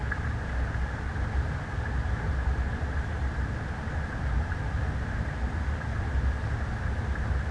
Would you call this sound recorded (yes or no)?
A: yes